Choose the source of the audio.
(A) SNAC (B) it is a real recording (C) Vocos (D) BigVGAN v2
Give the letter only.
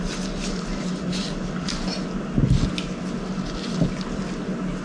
B